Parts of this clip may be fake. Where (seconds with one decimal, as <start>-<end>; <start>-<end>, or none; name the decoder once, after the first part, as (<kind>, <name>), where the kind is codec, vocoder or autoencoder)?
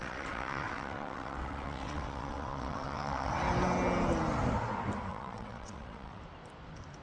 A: 0.0-3.3 (vocoder, WaveNeXt); 5.1-6.2